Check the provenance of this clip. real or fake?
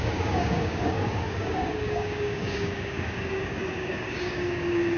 fake